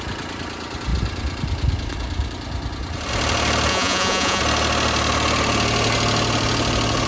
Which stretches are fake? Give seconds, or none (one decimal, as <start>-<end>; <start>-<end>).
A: 3.7-4.4